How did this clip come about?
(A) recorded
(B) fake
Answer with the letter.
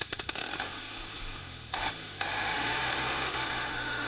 B